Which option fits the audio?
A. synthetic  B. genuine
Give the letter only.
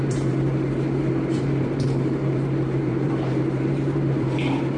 A